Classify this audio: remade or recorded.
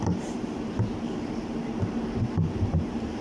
remade